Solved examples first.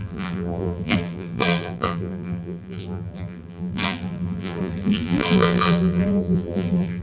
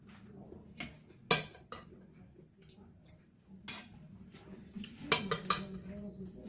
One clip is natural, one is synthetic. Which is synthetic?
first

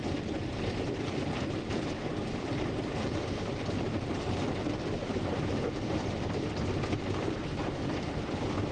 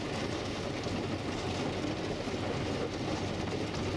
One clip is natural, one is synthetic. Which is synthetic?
first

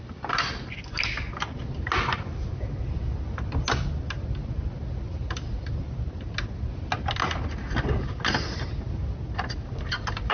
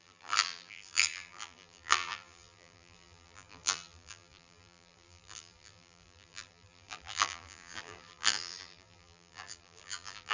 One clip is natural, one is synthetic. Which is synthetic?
second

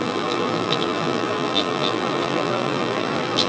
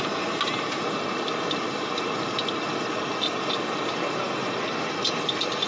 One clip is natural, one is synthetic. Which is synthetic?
first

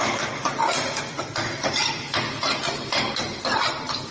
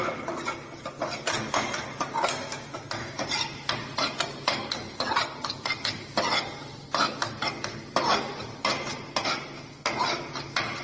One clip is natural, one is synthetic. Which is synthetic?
first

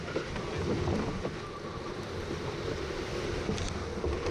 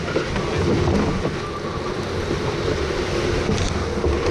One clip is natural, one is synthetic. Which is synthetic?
first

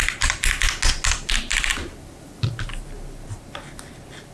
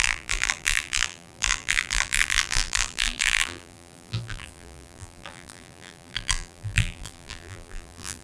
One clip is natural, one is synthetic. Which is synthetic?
second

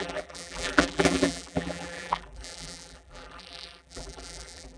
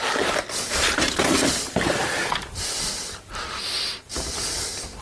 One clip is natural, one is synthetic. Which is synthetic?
first